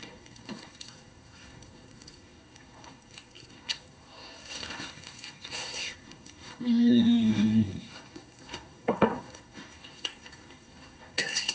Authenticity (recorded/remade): remade